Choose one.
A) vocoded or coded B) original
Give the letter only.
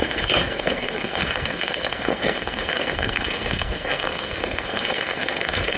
A